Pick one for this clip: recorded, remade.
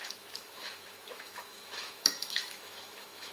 remade